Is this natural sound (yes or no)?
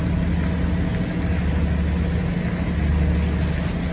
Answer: yes